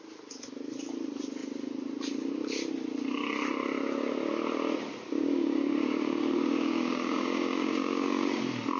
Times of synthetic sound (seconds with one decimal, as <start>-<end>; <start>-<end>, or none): 5.2-8.4